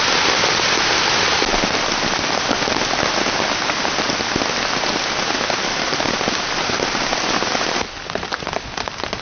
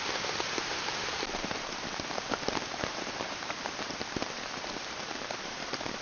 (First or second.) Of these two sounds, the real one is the first